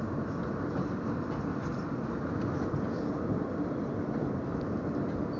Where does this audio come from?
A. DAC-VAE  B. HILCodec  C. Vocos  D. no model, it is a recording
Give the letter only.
D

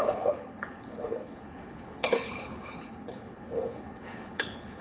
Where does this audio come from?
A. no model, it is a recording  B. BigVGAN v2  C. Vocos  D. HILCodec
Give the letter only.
D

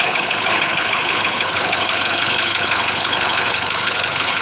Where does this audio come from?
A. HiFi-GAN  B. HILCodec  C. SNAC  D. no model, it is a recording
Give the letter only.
B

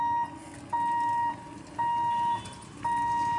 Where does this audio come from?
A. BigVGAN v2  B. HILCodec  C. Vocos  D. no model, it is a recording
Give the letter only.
D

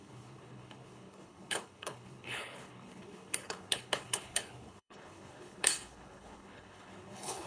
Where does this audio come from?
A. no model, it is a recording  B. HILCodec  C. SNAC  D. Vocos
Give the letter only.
B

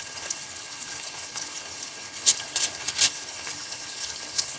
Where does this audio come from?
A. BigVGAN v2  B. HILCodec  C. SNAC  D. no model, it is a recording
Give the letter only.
B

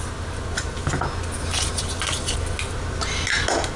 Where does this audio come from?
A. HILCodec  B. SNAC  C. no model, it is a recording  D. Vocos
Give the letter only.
C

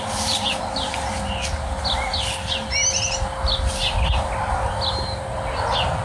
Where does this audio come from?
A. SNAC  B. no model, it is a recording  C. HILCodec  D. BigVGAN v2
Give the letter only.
B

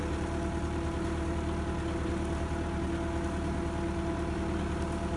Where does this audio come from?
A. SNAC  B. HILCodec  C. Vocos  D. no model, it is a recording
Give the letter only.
D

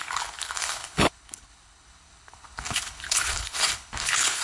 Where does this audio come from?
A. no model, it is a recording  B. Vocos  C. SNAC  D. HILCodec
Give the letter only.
D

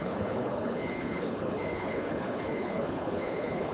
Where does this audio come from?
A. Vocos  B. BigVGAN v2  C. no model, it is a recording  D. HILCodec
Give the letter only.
D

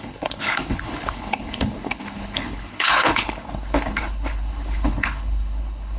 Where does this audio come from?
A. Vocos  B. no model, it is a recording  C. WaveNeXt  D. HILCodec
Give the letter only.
D